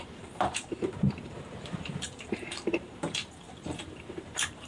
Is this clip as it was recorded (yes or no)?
no